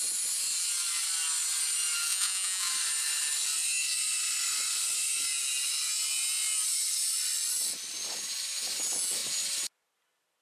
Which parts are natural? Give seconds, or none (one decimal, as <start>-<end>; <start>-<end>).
0.0-2.1; 2.7-10.4